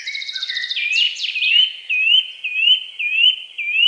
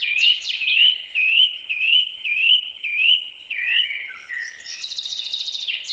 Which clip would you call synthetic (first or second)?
second